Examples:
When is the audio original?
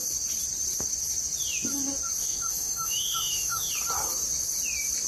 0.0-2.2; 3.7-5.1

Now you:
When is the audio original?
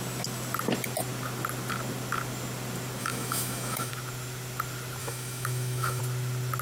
0.0-3.0; 3.9-5.0; 6.0-6.6